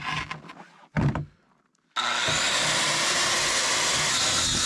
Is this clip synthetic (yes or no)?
no